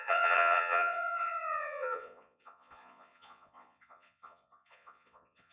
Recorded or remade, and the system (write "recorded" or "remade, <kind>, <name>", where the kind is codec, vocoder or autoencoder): remade, vocoder, Vocos